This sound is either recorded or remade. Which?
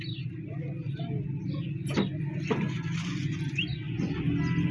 recorded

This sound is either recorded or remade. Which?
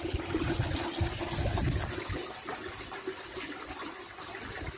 recorded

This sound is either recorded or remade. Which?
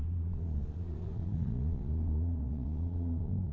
remade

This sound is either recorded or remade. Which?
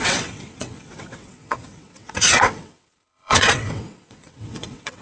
remade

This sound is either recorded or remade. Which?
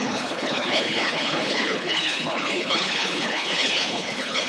remade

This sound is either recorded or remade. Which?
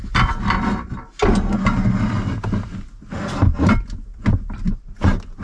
recorded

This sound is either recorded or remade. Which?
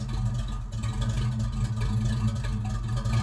recorded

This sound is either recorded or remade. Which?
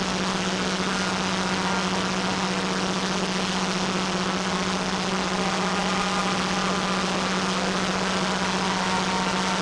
recorded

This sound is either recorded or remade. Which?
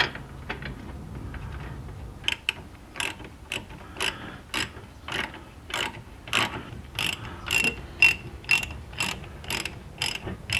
recorded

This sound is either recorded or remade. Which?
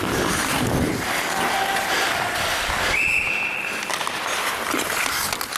recorded